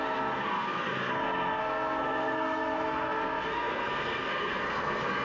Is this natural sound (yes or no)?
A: no